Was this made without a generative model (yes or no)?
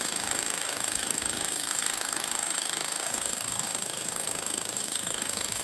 no